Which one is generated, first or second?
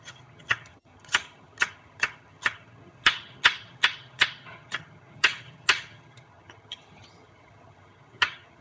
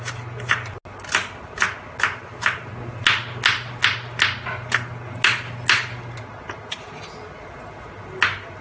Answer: first